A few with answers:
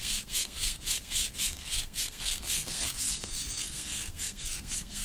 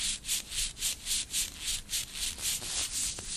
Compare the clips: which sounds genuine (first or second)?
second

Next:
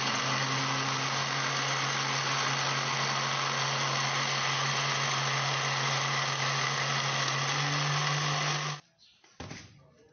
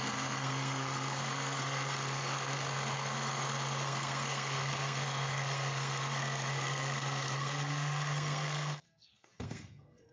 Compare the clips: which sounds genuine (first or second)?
first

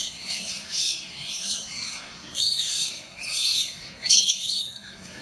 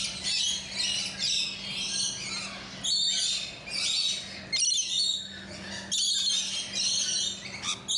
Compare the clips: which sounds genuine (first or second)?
second